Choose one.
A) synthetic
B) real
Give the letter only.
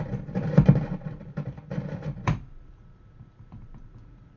A